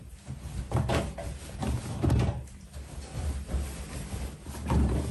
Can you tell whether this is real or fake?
fake